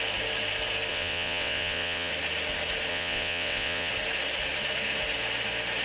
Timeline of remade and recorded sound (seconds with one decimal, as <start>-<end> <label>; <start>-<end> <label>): 0.0-0.9 recorded; 0.9-2.1 remade; 2.1-2.9 recorded; 2.9-3.9 remade; 3.9-5.8 recorded